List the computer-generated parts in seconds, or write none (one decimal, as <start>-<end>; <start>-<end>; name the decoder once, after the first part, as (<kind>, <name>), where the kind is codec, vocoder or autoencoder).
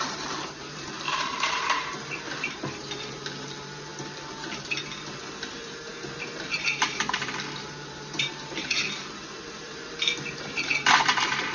0.0-3.9 (vocoder, BigVGAN v2); 5.5-11.5